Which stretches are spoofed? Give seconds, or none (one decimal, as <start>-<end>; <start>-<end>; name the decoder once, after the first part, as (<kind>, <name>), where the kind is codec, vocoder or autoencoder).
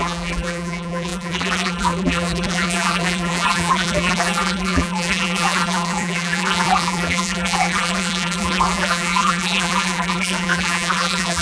0.0-11.4 (vocoder, BigVGAN v2)